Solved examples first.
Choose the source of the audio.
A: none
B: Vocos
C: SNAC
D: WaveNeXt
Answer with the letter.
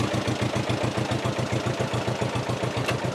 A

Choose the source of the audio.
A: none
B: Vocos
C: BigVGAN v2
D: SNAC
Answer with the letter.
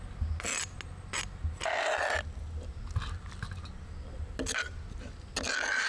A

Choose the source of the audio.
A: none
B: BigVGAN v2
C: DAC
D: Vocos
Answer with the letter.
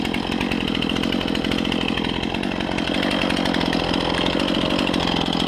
A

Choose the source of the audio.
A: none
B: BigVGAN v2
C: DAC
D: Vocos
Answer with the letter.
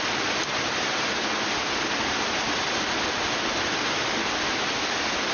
A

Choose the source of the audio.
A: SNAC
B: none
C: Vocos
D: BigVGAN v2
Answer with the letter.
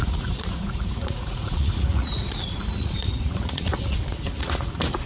C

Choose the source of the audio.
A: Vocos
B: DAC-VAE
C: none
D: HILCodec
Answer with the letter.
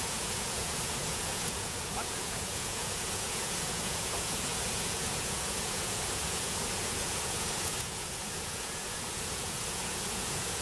A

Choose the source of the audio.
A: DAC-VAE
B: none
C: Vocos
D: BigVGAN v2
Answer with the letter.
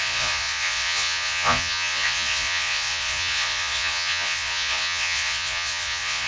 C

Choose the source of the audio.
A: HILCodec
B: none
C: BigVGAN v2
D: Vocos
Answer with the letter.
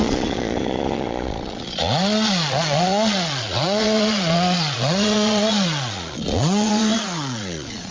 D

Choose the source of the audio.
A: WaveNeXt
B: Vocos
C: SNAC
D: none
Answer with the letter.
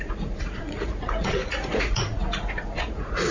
B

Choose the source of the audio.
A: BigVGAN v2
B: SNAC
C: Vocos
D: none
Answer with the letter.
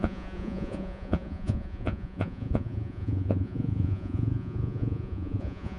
C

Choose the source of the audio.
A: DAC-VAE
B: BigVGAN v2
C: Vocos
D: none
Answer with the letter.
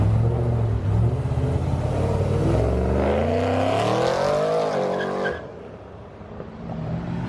D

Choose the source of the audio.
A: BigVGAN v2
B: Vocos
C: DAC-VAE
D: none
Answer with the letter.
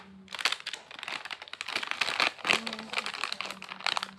D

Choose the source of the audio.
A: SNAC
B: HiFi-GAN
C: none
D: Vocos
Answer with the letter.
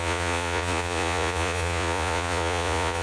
D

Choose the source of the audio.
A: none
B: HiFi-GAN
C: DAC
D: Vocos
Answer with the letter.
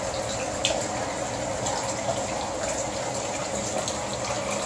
A